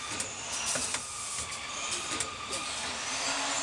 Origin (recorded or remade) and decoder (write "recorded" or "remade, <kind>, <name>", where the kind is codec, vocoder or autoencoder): recorded